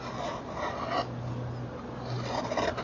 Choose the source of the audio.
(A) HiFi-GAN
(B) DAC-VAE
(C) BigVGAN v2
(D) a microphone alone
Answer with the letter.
D